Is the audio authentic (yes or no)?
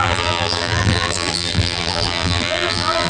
no